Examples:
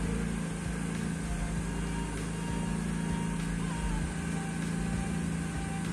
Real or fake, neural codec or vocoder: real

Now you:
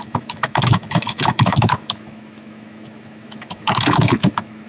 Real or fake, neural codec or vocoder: fake, autoencoder, DAC-VAE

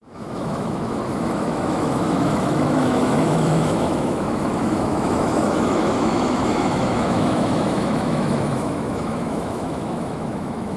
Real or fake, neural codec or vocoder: fake, autoencoder, DAC-VAE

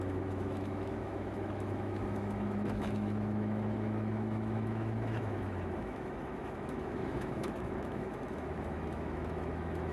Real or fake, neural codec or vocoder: fake, autoencoder, DAC-VAE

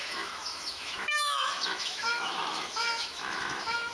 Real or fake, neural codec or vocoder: fake, autoencoder, DAC-VAE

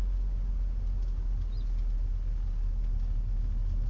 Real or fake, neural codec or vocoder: real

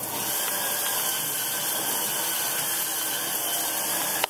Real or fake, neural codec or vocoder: real